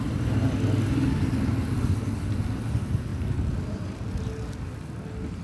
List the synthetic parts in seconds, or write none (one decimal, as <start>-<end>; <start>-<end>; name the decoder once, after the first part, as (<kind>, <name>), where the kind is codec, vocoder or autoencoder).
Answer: 3.1-4.3 (vocoder, BigVGAN v2)